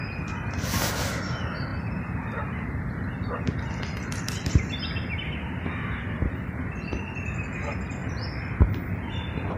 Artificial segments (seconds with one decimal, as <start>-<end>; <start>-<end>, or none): 8.0-9.6